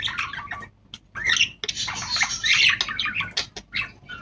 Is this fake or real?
real